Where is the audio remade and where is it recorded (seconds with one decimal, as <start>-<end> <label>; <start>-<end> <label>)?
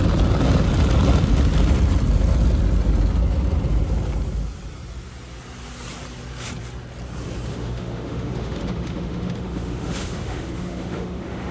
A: 0.0-7.5 recorded; 7.5-11.5 remade